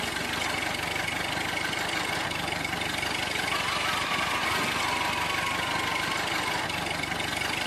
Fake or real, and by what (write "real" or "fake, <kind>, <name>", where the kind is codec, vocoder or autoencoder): real